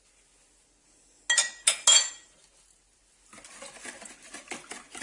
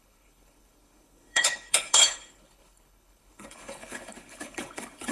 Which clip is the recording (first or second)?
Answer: first